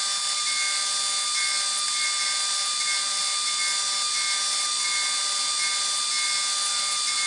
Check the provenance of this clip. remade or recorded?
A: recorded